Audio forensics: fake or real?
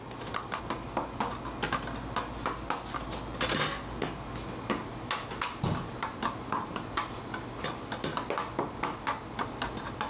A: real